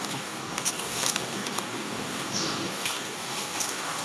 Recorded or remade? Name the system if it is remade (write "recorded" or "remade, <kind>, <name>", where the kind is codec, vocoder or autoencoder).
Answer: remade, codec, DAC